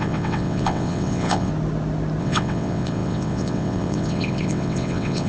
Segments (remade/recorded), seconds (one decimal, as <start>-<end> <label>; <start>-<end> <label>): 0.0-1.5 remade; 1.5-2.2 recorded; 2.2-5.3 remade